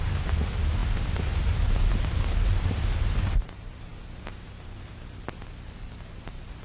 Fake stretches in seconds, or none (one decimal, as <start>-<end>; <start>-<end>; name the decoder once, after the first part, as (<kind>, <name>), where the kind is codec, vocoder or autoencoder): 0.0-6.6 (vocoder, BigVGAN v2)